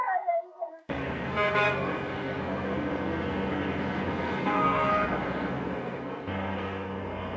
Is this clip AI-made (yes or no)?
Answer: yes